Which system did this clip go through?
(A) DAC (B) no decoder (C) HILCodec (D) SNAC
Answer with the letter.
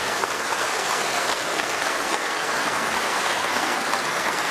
D